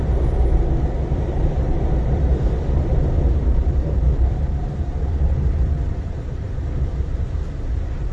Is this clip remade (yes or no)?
yes